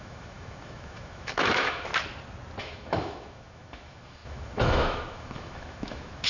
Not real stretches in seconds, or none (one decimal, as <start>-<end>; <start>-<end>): 0.0-1.9; 2.6-6.3